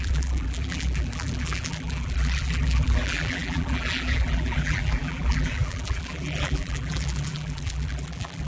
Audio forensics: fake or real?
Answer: fake